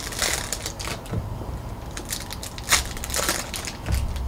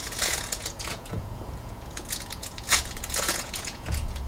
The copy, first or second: second